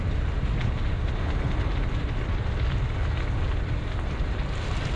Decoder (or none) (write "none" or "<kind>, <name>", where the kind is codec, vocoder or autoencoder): none